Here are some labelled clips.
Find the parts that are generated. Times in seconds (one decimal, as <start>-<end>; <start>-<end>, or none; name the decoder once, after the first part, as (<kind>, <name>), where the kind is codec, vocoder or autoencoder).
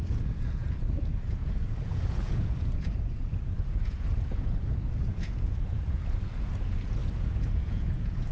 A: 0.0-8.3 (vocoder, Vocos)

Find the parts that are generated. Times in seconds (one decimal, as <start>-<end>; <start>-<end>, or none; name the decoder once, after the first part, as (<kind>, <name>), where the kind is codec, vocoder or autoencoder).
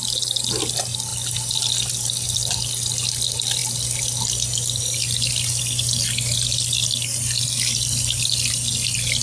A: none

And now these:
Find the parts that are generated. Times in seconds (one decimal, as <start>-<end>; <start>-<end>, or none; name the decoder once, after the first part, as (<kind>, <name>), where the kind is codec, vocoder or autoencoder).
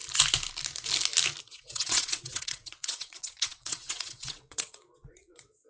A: 1.4-5.7 (vocoder, WaveNeXt)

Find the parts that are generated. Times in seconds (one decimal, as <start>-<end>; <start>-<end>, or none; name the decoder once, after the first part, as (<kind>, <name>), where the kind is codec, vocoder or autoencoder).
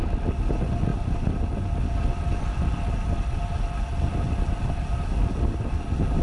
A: none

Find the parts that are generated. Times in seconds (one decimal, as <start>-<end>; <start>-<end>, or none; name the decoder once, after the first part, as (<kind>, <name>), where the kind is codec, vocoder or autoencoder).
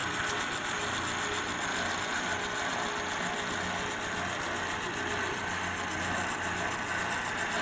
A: none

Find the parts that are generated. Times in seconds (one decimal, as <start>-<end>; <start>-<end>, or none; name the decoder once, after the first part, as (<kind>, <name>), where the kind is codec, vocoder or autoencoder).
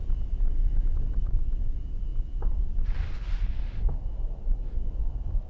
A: none